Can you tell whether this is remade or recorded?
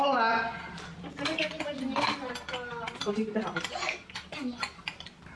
recorded